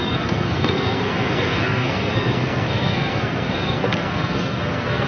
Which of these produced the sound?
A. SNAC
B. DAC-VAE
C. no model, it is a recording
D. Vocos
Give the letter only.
A